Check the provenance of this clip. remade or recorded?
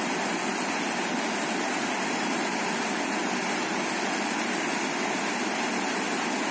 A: recorded